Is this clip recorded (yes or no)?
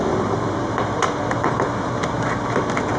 no